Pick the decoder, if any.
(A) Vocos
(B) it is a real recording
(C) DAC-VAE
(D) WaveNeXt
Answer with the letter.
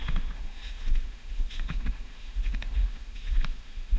C